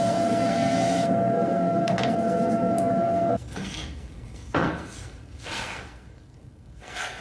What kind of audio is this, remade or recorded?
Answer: remade